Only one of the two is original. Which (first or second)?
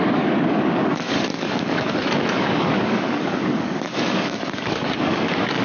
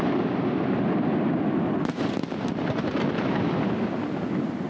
second